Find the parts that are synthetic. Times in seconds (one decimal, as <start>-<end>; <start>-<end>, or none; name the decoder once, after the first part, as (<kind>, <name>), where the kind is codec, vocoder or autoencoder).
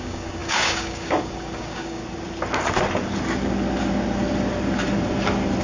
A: 0.0-2.0 (codec, DAC)